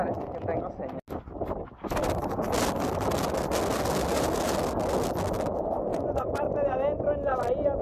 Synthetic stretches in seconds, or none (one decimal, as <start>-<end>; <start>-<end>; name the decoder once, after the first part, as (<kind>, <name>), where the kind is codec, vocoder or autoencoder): 5.9-6.4 (vocoder, Vocos)